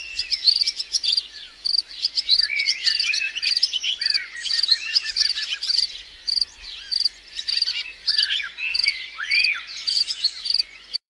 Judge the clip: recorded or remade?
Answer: remade